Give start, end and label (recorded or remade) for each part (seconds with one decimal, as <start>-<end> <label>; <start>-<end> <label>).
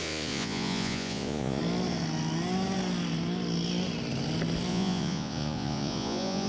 0.0-1.6 remade; 1.6-4.7 recorded; 4.7-6.5 remade